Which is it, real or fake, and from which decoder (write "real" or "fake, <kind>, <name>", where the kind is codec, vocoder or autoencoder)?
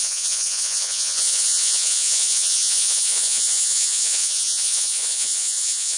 fake, vocoder, Vocos